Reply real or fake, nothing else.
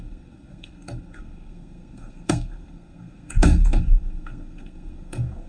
fake